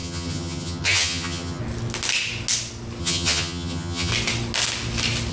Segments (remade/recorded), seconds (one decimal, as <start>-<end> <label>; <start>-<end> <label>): 0.0-1.6 remade; 1.6-3.0 recorded; 3.0-4.1 remade; 4.1-5.3 recorded